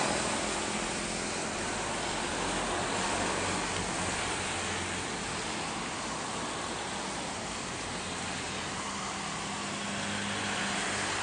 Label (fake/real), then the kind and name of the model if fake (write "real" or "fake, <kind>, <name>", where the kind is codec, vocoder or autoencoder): real